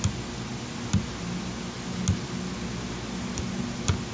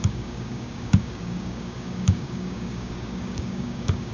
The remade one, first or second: second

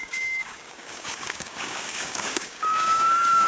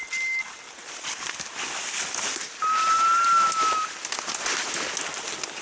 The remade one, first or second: first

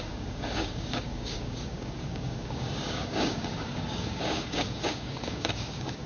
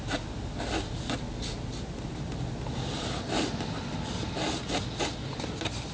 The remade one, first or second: first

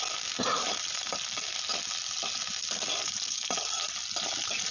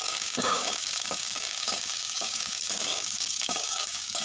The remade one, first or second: second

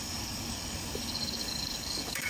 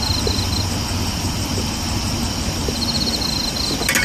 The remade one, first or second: first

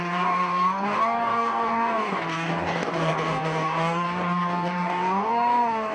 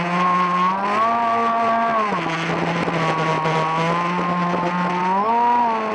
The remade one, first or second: first